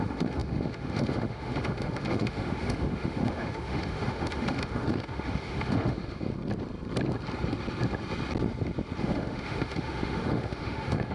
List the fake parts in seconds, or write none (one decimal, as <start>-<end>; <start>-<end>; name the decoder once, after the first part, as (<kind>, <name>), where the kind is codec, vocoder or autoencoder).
0.0-6.3 (autoencoder, DAC-VAE); 9.0-11.1